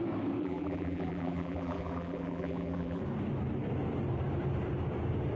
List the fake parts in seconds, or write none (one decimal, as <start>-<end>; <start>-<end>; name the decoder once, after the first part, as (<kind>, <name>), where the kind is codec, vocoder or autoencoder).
0.4-3.0 (vocoder, BigVGAN v2)